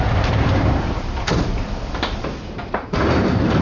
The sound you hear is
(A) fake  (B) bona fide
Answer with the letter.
A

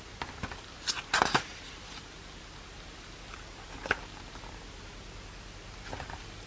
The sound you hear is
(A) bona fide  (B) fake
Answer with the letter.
A